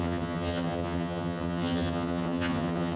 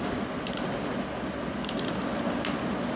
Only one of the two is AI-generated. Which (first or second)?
first